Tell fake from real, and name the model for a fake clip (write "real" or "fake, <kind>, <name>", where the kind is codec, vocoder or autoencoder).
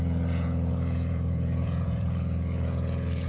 fake, vocoder, Vocos